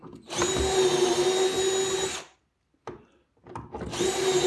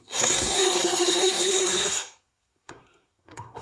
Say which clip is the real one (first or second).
first